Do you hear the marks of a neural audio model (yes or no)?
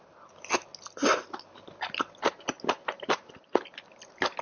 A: no